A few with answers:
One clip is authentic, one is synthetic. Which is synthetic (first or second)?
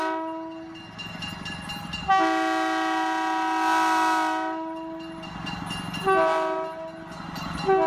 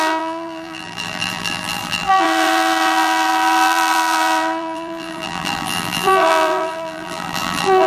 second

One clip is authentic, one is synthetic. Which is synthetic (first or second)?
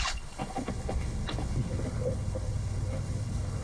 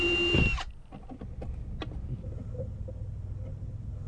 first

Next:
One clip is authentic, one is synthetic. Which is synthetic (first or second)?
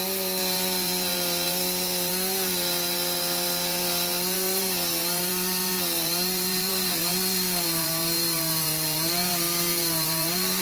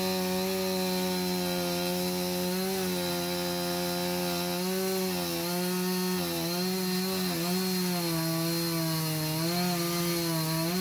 first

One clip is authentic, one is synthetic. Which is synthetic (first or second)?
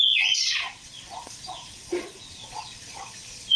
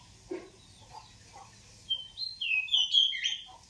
first